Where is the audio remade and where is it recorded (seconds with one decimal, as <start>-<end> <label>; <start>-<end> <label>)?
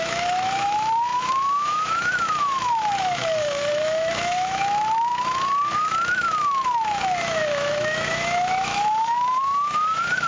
0.0-10.3 remade